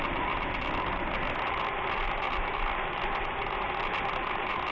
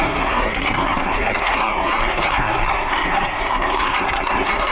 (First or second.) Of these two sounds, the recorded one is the first